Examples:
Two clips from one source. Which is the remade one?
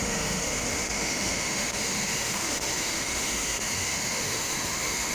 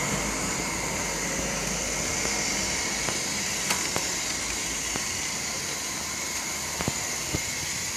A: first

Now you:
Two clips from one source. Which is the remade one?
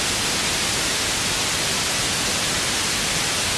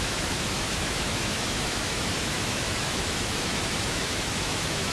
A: second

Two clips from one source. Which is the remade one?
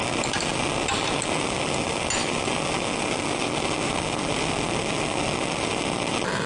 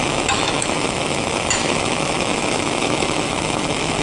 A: second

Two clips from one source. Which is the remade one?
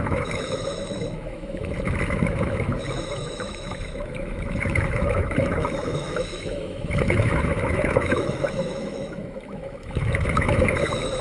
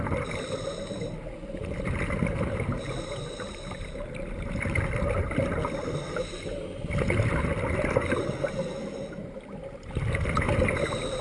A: first